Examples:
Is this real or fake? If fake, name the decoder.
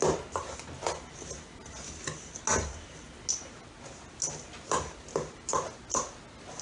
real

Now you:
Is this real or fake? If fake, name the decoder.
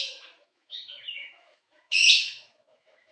fake, autoencoder, DAC-VAE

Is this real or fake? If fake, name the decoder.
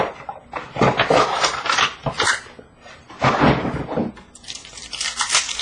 real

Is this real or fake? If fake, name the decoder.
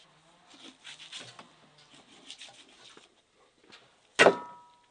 real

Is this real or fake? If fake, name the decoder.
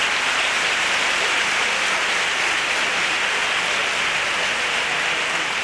real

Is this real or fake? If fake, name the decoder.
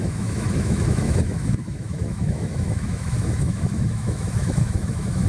fake, autoencoder, DAC-VAE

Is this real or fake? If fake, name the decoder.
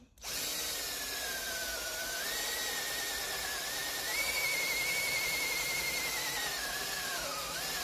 real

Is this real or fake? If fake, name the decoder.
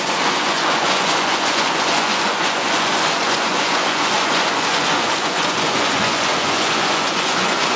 fake, vocoder, Vocos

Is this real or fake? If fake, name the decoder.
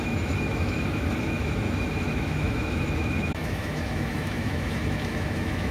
fake, autoencoder, DAC-VAE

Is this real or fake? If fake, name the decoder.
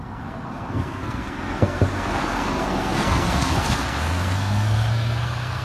fake, codec, SNAC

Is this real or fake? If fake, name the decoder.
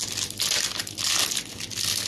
real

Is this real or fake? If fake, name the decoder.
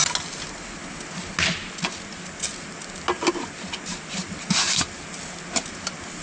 real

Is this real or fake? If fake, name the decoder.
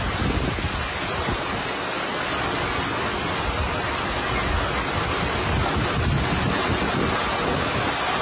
real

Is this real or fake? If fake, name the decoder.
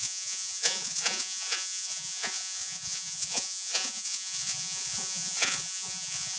fake, vocoder, Vocos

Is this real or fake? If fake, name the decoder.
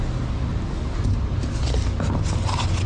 real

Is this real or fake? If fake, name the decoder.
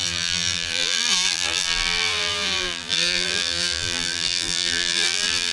fake, vocoder, BigVGAN v2